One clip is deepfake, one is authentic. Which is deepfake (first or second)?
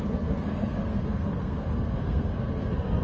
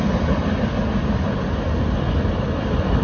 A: first